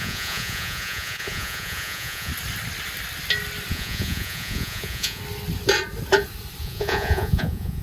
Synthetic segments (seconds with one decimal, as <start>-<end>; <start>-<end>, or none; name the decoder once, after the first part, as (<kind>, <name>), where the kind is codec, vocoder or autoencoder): 0.0-2.3 (vocoder, Vocos); 3.7-5.2; 6.6-7.8

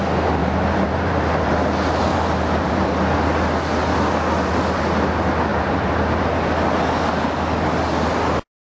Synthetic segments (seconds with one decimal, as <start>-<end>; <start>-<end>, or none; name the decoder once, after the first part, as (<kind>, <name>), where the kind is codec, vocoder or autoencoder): 0.4-1.5 (vocoder, BigVGAN v2); 2.1-2.9; 5.5-6.2

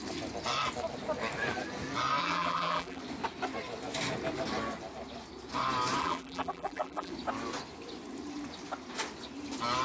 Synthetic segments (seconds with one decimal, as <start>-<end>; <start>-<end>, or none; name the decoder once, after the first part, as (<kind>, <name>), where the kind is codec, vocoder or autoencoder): 2.2-3.0 (vocoder, BigVGAN v2); 6.0-7.1

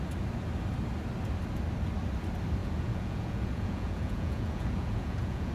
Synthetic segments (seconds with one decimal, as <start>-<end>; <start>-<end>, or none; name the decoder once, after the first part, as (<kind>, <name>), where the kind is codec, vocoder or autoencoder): 2.6-5.5 (vocoder, Vocos)

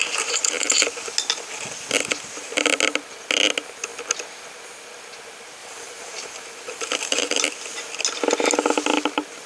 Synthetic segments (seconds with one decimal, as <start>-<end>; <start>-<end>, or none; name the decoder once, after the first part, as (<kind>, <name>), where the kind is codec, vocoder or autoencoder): 5.6-7.4 (vocoder, BigVGAN v2)